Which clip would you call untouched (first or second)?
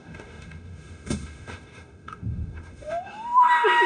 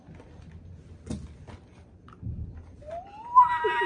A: second